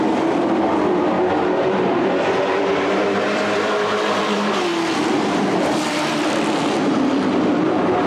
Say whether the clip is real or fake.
fake